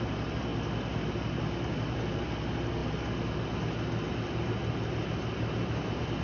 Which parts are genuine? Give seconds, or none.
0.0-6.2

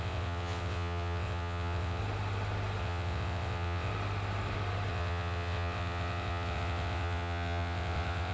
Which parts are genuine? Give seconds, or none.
2.0-2.8; 3.9-4.9

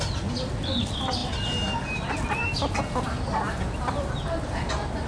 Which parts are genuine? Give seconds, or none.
0.0-5.1

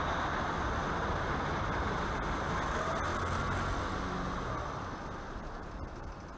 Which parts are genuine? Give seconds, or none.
0.0-6.4